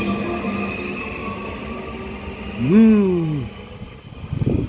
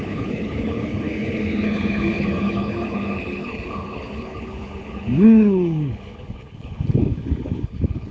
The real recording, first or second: first